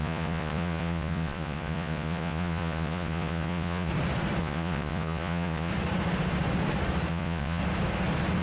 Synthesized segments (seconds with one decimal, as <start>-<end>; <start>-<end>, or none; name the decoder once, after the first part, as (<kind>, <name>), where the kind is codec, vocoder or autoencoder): 0.0-3.9 (vocoder, Vocos); 4.4-5.7; 7.1-7.6